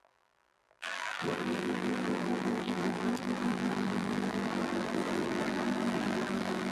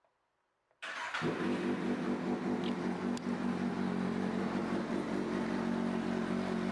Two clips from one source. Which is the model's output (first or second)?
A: first